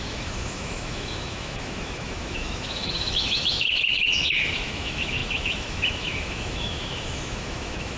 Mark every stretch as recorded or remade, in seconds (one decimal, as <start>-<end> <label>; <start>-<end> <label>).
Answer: 0.0-8.0 remade